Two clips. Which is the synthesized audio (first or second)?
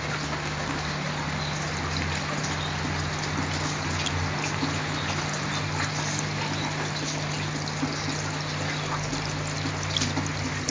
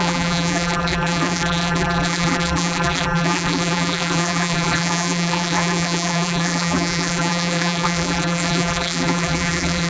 second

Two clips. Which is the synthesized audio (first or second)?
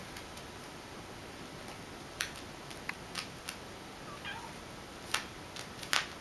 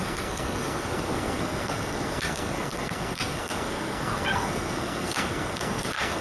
second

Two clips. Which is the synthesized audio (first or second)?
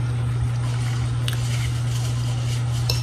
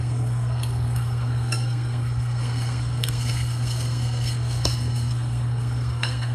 second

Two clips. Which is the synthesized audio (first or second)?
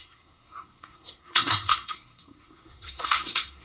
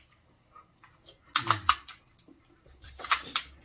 first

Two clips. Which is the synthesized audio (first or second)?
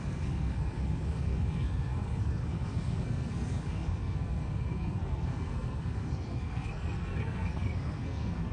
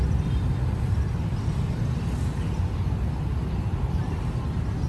first